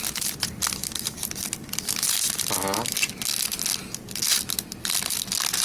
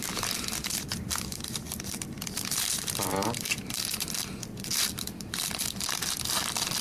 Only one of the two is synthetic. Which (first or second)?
second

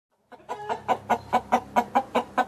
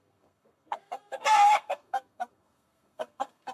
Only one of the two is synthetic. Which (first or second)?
second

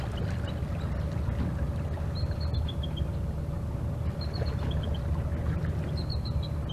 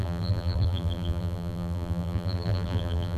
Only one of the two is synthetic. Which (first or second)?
second